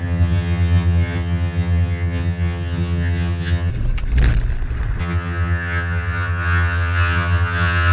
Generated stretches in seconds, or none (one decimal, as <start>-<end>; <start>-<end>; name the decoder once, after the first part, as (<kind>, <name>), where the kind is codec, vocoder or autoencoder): 0.0-3.7 (vocoder, HiFi-GAN); 5.0-7.9